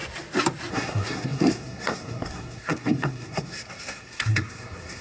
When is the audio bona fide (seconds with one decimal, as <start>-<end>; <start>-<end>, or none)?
0.0-0.7